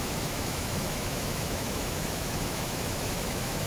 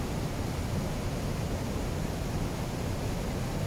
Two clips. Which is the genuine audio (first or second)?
second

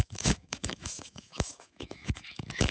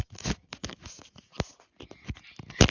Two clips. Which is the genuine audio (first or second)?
second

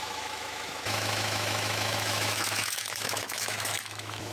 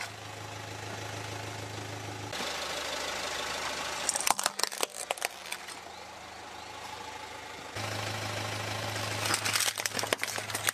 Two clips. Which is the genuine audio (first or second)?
second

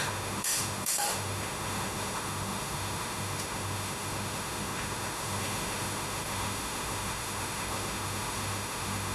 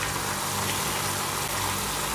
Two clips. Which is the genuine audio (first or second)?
second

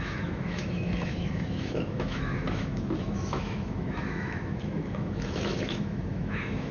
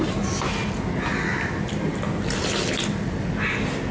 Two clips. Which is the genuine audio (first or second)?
second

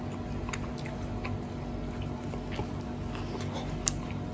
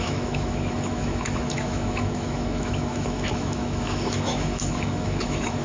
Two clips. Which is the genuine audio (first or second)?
first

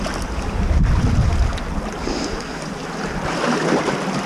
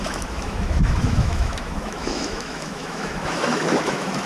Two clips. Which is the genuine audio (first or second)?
first